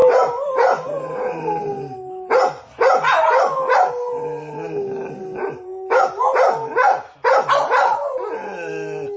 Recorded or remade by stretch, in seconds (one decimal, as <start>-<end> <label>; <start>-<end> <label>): 0.0-9.2 recorded